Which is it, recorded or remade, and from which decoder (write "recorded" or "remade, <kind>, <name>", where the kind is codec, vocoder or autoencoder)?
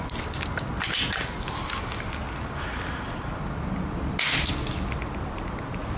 recorded